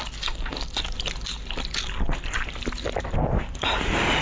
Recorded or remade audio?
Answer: recorded